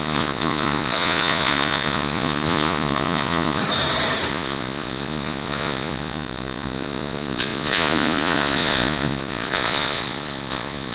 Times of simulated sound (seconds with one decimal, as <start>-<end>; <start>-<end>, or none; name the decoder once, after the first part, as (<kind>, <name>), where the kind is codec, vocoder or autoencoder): 0.0-3.6 (vocoder, Vocos); 4.3-10.9